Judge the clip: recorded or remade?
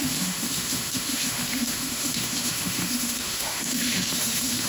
remade